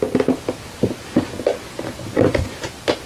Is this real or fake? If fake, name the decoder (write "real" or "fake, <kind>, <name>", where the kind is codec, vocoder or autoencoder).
real